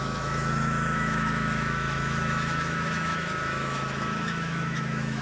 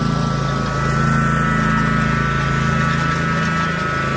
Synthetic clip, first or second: first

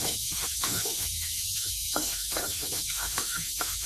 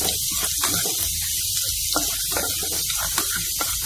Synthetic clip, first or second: first